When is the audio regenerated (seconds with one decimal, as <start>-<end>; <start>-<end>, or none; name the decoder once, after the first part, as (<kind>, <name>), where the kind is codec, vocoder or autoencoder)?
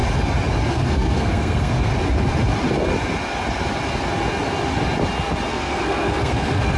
0.7-1.9 (codec, SNAC); 5.5-6.8